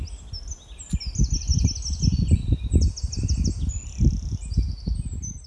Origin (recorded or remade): recorded